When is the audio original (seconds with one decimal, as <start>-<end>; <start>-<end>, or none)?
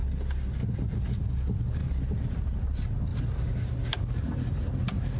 0.0-5.2